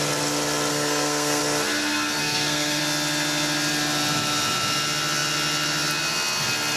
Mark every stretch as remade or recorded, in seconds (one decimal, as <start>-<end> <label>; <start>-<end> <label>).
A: 0.0-0.7 recorded; 0.7-1.4 remade; 1.4-2.2 recorded; 2.2-2.8 remade; 2.8-6.8 recorded